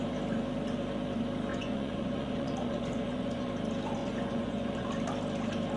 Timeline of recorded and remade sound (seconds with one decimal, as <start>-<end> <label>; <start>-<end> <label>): 0.0-1.5 recorded; 1.5-3.5 remade; 3.5-4.0 recorded; 4.0-4.9 remade; 4.9-5.8 recorded

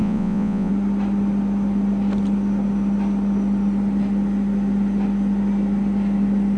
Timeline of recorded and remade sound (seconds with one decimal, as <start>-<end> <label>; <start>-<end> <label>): 0.0-0.7 remade; 0.7-6.6 recorded

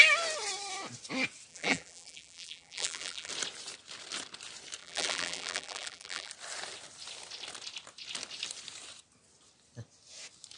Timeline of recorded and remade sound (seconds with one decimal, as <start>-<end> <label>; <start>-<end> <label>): 0.0-1.5 recorded; 1.5-3.3 remade; 3.3-4.8 recorded; 4.8-6.3 remade; 6.3-10.6 recorded

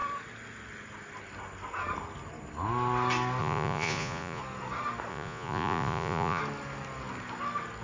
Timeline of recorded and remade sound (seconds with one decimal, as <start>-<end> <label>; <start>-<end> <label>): 0.0-3.4 recorded; 3.4-4.4 remade; 4.4-5.1 recorded; 5.1-6.4 remade; 6.4-7.8 recorded

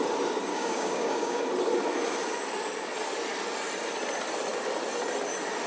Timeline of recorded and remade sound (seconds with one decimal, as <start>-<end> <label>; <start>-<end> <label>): 0.0-0.5 recorded; 0.5-1.4 remade; 1.4-5.7 recorded